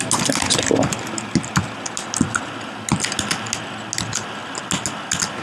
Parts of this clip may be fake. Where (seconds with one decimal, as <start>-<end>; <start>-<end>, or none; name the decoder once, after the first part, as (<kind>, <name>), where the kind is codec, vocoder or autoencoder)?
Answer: none